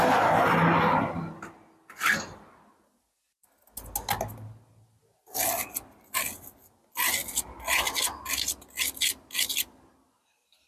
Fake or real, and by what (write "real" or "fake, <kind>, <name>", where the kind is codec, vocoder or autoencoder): real